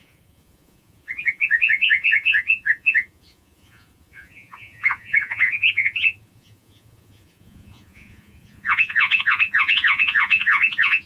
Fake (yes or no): yes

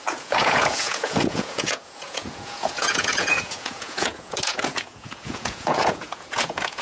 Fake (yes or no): yes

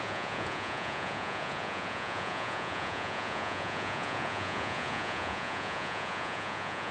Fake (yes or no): yes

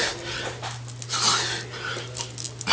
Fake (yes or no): no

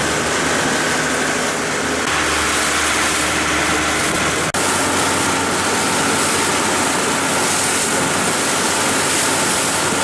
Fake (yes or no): no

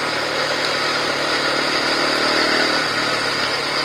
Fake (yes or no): no